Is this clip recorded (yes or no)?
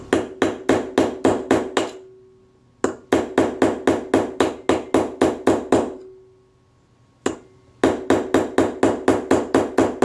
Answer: yes